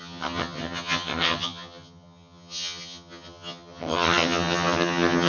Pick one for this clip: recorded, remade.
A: remade